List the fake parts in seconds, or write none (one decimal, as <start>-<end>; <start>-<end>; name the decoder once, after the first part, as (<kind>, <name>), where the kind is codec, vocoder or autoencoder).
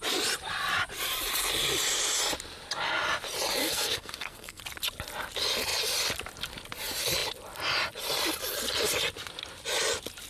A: 3.6-4.6 (codec, SNAC)